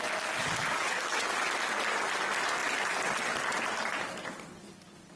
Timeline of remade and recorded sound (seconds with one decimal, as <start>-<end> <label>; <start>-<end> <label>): 0.0-0.6 recorded; 0.6-1.3 remade; 1.3-5.2 recorded